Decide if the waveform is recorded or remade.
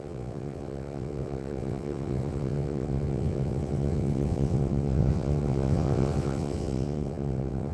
remade